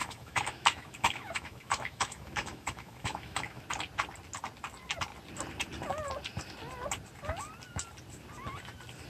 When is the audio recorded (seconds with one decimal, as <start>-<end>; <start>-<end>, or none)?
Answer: 3.6-9.1

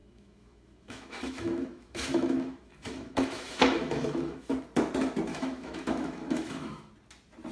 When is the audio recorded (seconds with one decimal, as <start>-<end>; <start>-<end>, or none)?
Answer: 4.5-5.3; 6.9-7.5

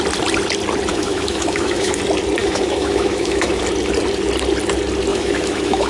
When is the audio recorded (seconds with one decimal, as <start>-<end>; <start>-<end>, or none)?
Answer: 0.0-0.9; 2.0-2.4; 3.6-5.1

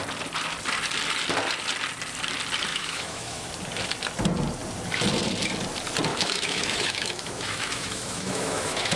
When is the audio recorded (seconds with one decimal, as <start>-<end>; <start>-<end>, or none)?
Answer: 0.0-2.7; 3.5-6.1

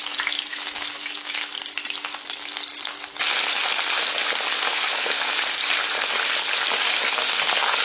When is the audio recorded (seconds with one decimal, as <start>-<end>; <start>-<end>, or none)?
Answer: 0.0-0.5; 1.5-4.7; 5.4-7.8

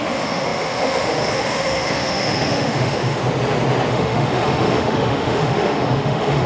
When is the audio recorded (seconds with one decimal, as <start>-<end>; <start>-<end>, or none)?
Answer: 3.2-3.9